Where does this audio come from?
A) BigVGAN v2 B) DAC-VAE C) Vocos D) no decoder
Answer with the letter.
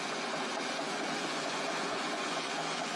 C